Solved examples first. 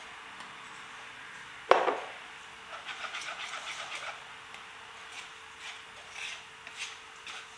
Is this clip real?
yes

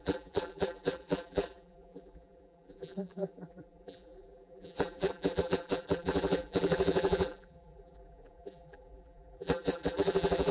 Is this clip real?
no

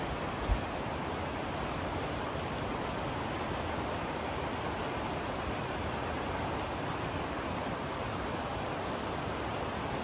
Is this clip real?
yes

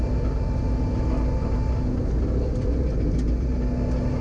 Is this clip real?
yes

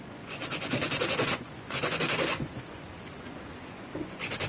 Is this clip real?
no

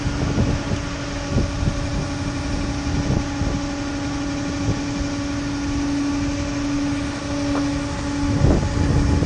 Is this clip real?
yes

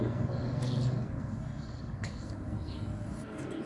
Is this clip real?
no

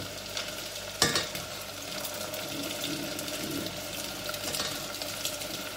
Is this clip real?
yes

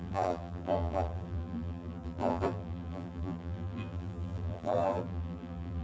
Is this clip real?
no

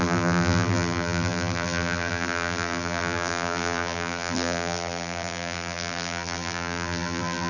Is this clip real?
no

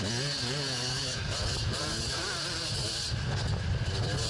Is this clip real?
yes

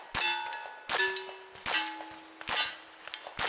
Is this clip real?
yes